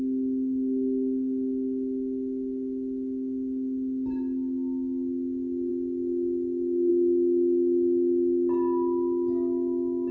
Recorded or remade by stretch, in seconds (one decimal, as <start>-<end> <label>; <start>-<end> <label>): 0.0-10.1 recorded